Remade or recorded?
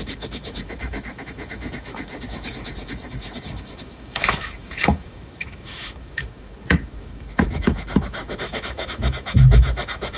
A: remade